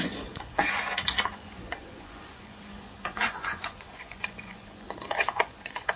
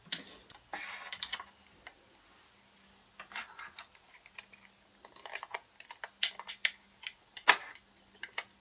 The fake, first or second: first